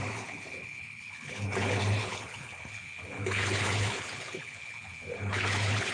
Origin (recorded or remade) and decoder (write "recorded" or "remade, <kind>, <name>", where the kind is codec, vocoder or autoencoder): remade, codec, HILCodec